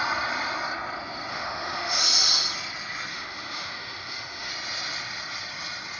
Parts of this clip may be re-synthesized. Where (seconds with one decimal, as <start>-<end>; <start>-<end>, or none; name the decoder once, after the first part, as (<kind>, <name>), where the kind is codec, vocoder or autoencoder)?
1.3-2.0 (autoencoder, DAC-VAE); 3.1-4.5